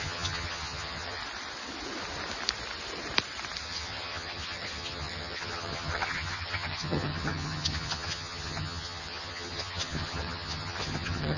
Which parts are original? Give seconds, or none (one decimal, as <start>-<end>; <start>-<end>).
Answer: 1.2-3.6